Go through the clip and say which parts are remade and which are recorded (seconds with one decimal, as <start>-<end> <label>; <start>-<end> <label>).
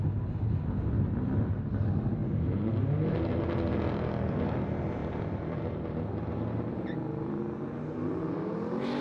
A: 0.0-5.0 recorded; 5.0-7.4 remade; 7.4-9.0 recorded